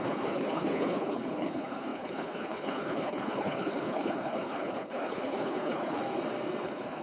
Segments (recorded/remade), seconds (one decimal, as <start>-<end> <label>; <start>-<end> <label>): 0.0-6.0 remade; 6.0-6.6 recorded; 6.6-7.0 remade